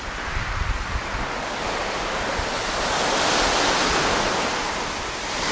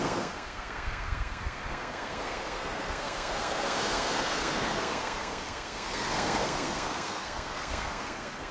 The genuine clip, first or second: first